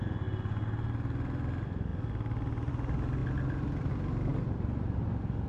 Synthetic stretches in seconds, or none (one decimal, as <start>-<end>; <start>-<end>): none